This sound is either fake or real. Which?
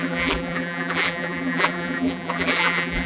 fake